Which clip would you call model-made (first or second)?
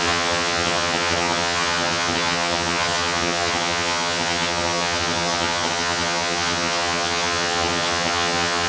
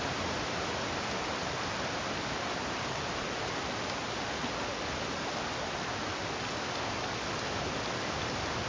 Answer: first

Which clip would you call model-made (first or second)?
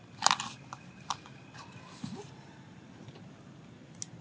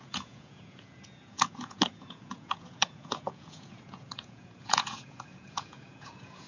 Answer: second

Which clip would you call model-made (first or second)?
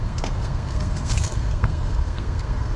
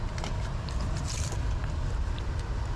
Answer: first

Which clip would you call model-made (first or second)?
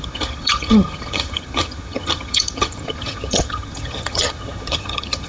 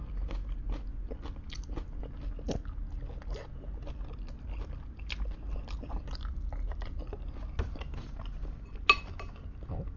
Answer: first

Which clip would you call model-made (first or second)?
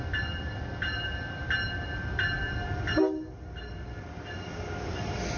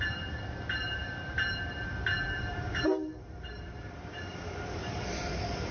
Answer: second